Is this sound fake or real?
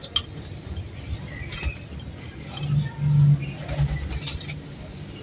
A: real